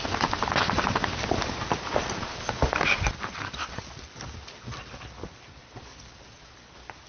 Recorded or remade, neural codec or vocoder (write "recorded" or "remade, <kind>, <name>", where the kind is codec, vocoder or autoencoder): recorded